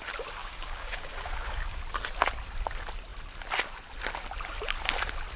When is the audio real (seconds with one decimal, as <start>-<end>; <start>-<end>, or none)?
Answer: 0.0-0.4; 1.8-5.4

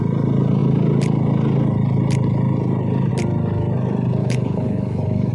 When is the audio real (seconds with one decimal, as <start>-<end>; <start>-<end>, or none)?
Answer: 0.0-4.2

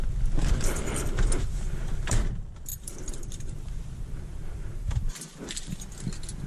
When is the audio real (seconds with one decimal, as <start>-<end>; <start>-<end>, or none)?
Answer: 0.0-0.4; 2.2-2.7; 3.7-4.4; 5.7-6.5

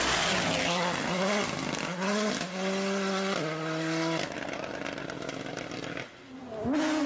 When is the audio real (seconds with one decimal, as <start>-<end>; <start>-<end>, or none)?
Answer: 0.0-7.1

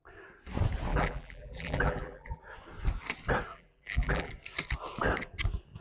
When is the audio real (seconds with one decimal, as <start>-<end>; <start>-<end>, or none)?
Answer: 0.0-0.9; 2.4-3.5; 4.3-5.8

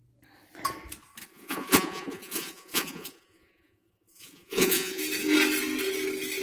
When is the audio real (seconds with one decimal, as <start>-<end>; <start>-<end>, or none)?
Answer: 0.0-1.2; 5.0-6.4